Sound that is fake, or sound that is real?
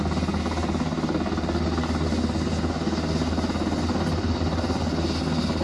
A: real